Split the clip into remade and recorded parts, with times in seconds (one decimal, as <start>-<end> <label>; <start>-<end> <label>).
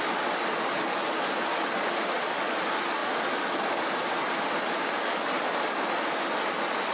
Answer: 0.0-6.9 recorded